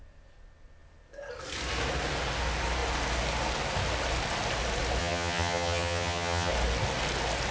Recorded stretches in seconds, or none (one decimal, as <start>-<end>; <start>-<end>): 0.0-5.0; 6.5-7.5